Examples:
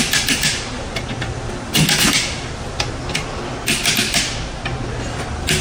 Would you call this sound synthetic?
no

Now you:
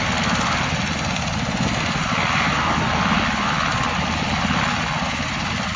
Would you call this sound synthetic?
no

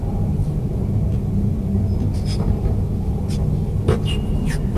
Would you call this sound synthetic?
no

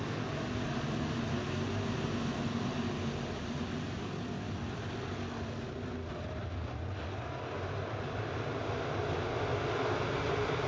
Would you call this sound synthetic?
no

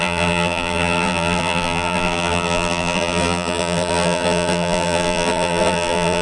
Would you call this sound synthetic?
yes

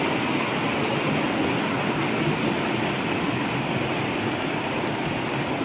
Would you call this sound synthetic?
no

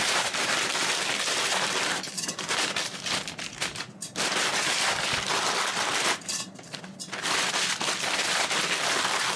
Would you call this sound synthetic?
yes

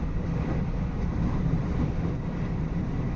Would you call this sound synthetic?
yes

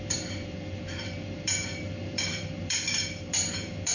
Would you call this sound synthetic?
yes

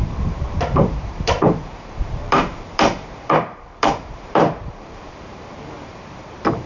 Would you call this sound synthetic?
yes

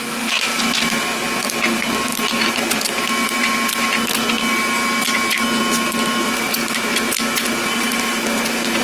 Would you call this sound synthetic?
no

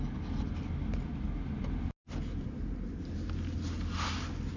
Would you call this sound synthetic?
no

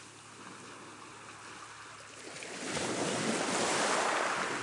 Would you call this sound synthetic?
no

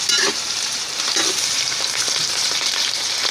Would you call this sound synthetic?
yes